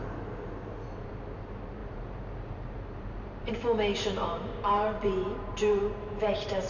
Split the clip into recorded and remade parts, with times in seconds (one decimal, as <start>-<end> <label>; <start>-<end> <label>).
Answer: 0.0-1.8 recorded; 1.8-3.5 remade; 3.5-3.9 recorded; 3.9-6.7 remade